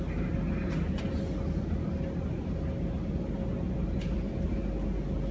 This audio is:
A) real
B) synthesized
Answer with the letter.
A